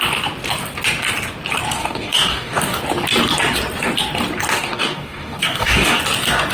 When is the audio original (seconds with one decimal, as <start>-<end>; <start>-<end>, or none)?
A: 0.0-1.8; 2.8-4.5; 6.0-6.5